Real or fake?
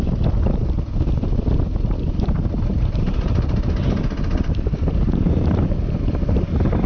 real